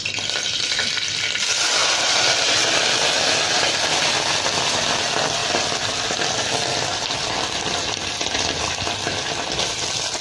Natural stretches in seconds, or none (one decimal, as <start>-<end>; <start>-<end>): 0.0-10.2

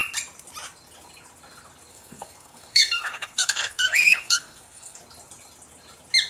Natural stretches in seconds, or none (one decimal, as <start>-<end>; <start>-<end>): 0.0-1.9; 5.0-6.3

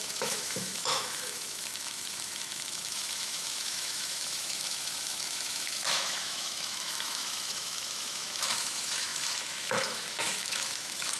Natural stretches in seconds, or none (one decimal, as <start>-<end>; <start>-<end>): none

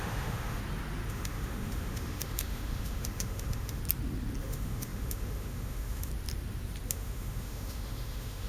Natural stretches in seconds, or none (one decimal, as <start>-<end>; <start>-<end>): 0.6-1.1; 3.8-4.4; 6.1-6.9

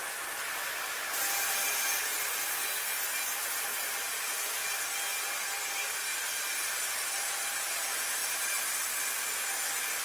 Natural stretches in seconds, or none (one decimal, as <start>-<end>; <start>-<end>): 0.0-3.7; 4.8-6.1; 6.9-8.2; 9.0-10.0

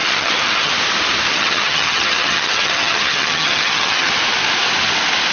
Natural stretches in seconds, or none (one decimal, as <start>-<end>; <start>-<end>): 0.7-1.3; 4.1-5.3

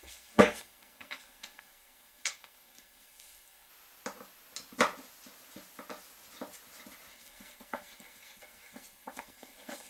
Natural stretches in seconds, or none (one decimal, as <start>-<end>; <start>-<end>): 3.7-7.1